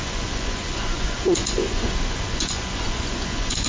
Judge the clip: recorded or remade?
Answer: remade